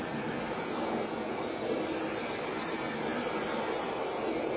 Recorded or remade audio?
recorded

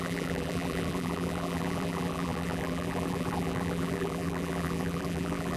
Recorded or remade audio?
remade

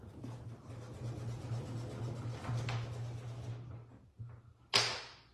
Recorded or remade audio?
recorded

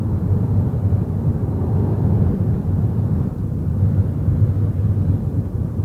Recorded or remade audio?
recorded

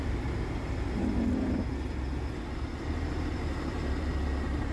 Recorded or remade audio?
remade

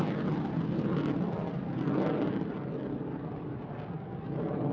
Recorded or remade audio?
recorded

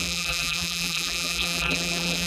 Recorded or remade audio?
remade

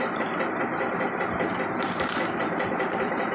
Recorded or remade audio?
remade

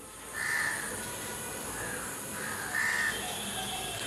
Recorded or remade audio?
recorded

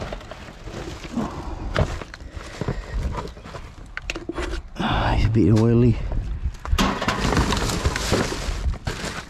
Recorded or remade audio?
recorded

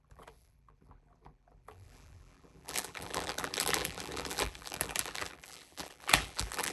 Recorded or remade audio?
remade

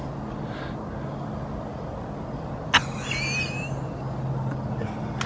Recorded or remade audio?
recorded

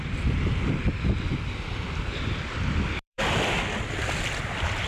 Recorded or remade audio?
remade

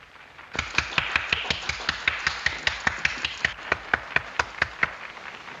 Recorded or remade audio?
recorded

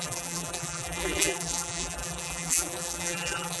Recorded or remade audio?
remade